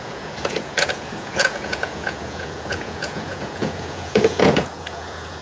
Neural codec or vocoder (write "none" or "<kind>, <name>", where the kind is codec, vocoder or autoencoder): vocoder, Vocos